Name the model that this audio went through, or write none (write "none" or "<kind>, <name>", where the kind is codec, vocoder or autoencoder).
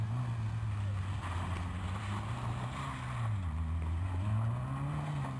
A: none